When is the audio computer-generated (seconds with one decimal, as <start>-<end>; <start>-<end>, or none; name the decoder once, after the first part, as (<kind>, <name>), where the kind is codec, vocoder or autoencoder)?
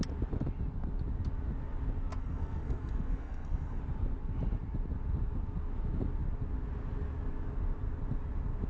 2.2-3.8 (codec, SNAC)